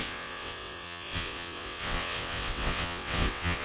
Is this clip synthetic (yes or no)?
yes